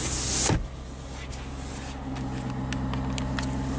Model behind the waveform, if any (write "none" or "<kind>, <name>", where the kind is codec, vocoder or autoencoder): none